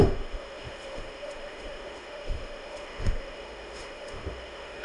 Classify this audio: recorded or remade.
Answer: remade